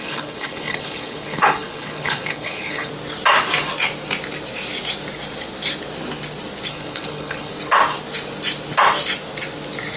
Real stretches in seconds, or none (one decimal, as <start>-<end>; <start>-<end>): 2.9-6.7; 7.5-10.0

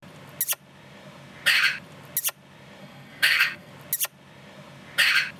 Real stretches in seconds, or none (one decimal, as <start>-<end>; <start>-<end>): 0.0-2.8; 3.7-5.4

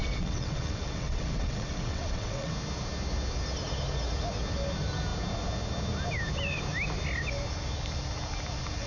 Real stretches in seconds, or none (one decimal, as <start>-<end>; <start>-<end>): 2.5-8.9

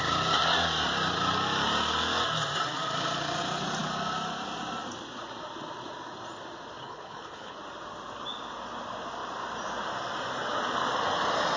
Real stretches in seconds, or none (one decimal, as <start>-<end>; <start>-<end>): 0.0-6.8; 7.6-11.6